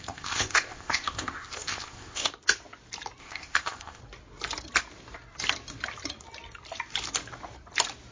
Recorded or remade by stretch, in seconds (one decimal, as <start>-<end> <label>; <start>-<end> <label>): 0.0-2.3 remade; 2.3-3.2 recorded; 3.2-4.0 remade; 4.0-8.1 recorded

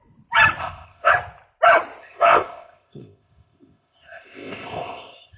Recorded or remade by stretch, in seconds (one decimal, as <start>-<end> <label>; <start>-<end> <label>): 0.0-0.6 recorded; 0.6-1.1 remade; 1.1-2.0 recorded; 2.0-5.4 remade

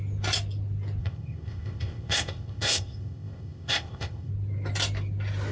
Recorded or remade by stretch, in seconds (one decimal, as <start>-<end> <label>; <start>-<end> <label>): 0.0-1.0 recorded; 1.0-4.3 remade; 4.3-5.5 recorded

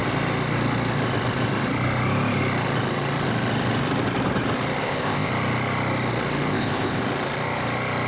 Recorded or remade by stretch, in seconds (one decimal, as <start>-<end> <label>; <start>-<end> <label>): 0.0-4.8 recorded; 4.8-5.3 remade; 5.3-6.5 recorded; 6.5-7.0 remade; 7.0-8.1 recorded

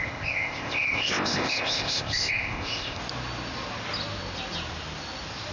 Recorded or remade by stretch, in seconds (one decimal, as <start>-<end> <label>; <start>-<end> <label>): 0.0-3.0 remade; 3.0-5.5 recorded